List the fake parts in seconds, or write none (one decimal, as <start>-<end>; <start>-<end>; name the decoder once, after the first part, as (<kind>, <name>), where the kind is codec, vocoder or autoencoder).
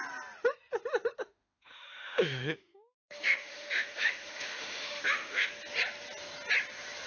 1.2-5.5 (autoencoder, DAC-VAE)